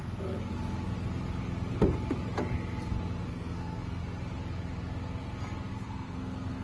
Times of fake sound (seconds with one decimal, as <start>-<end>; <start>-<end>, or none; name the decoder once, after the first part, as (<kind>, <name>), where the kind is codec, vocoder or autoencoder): 0.0-0.5 (codec, SNAC); 3.3-4.0; 5.7-6.6